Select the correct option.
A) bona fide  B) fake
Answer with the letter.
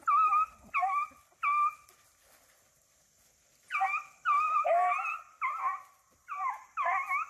A